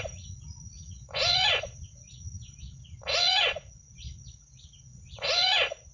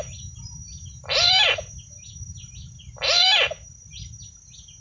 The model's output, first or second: first